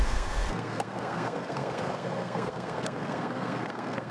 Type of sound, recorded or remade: remade